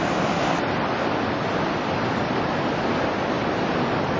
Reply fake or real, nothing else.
real